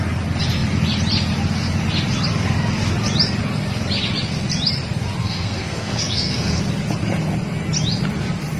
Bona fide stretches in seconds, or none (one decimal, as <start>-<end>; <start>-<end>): 0.0-5.2; 6.6-8.6